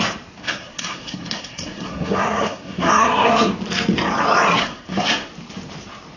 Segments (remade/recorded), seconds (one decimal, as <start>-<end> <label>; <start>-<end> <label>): 0.0-0.4 recorded; 0.4-3.5 remade; 3.5-4.6 recorded; 4.6-5.3 remade; 5.3-6.2 recorded